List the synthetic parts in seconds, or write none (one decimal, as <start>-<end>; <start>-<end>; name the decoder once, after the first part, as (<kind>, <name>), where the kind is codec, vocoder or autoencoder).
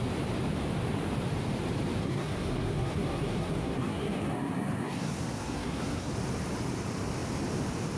2.0-6.1 (codec, SNAC)